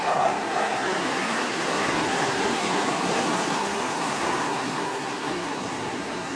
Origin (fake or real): fake